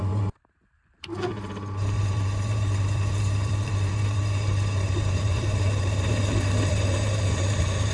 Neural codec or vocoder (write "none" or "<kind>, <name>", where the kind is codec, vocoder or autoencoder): vocoder, BigVGAN v2